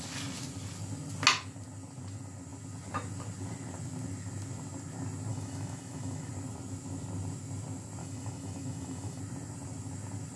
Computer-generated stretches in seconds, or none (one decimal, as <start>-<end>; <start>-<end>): 5.3-6.3; 8.0-9.2